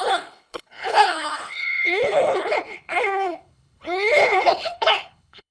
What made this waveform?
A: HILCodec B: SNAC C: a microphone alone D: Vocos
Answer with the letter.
A